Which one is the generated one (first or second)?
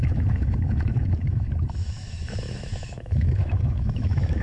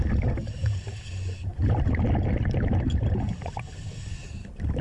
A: first